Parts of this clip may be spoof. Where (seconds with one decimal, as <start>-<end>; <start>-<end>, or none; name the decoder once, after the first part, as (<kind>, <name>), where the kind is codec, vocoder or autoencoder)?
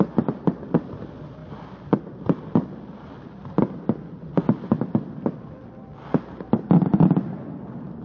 none